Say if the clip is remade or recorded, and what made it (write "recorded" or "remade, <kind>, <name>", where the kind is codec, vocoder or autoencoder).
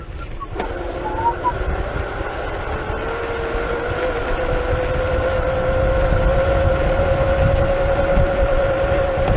recorded